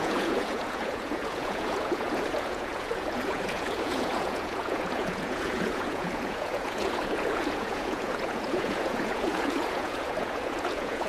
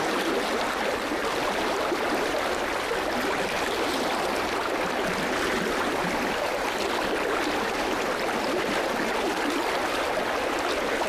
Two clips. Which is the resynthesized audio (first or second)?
first